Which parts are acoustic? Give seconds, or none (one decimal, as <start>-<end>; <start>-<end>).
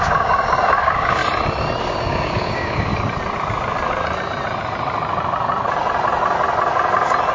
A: 1.2-1.8; 2.9-7.3